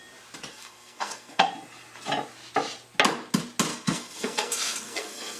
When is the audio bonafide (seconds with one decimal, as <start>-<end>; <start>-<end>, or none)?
0.0-0.5; 1.5-3.7